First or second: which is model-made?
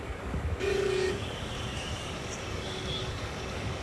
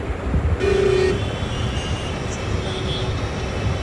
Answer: first